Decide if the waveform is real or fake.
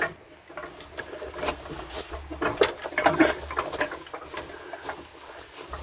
real